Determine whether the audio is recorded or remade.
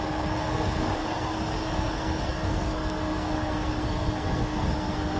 remade